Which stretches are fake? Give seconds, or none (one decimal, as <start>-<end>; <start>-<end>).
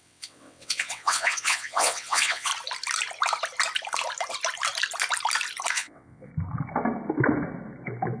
0.0-2.5; 5.7-6.3